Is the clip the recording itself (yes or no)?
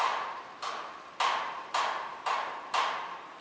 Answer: no